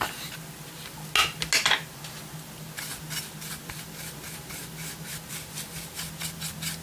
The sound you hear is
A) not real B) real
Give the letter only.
B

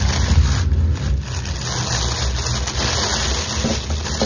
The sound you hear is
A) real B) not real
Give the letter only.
A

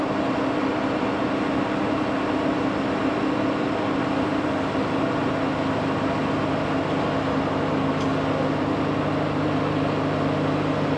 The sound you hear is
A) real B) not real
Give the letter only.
A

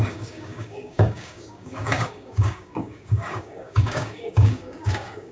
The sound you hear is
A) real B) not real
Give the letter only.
B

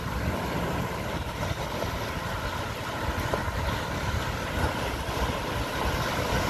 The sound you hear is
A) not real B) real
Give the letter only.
B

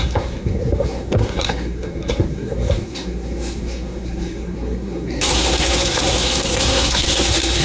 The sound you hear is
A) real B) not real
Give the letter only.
B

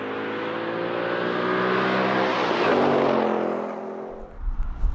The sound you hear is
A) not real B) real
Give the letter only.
B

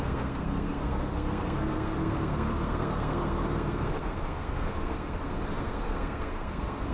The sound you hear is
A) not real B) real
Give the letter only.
A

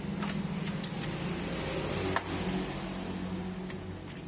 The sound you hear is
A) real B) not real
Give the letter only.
A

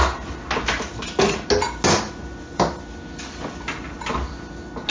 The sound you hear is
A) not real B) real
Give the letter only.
B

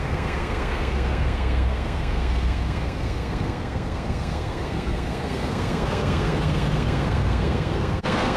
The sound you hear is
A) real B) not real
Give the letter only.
B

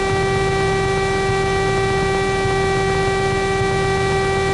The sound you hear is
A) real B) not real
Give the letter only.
A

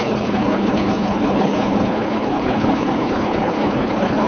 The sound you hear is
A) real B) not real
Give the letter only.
B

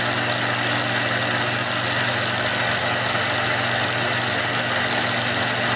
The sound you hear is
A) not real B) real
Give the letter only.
B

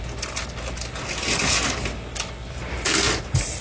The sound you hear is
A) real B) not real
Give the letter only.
A